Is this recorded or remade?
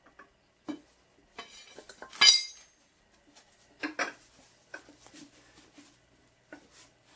recorded